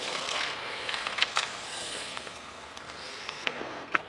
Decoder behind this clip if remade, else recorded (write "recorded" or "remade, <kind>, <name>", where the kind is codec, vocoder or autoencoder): remade, codec, SNAC